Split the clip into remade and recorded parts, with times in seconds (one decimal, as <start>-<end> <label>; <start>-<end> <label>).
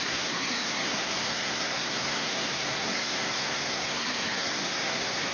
0.0-5.3 remade